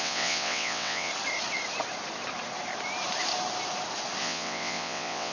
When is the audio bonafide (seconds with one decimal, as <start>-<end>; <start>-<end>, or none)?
1.1-4.2